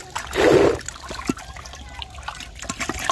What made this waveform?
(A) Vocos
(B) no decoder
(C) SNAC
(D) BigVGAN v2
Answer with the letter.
B